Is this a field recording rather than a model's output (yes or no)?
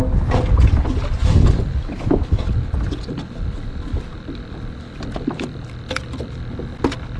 yes